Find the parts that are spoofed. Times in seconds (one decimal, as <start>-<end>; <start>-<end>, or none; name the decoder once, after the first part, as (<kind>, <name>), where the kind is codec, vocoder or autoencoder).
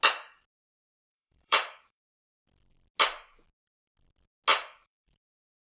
1.1-2.4 (vocoder, BigVGAN v2); 4.5-5.6